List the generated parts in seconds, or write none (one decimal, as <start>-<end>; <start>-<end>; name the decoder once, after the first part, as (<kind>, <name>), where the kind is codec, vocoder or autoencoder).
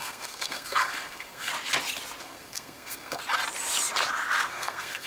0.0-1.5 (codec, SNAC); 2.2-3.2; 4.5-5.1